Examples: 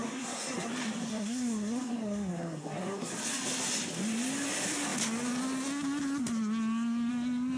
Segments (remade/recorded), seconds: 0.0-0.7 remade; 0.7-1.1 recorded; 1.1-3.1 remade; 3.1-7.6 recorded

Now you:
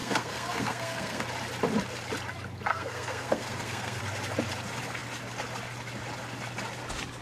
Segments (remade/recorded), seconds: 0.0-1.2 remade; 1.2-2.7 recorded; 2.7-4.0 remade; 4.0-7.2 recorded